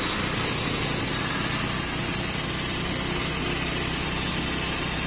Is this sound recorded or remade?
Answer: recorded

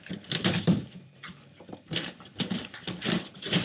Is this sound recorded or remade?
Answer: remade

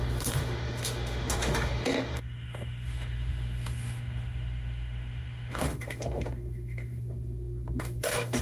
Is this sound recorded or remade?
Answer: remade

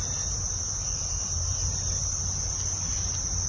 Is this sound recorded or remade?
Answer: recorded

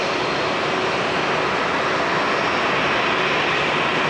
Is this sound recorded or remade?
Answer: recorded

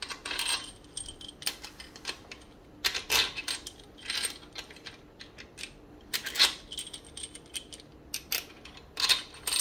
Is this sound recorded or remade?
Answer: recorded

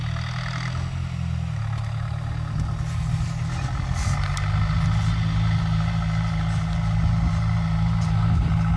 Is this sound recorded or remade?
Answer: recorded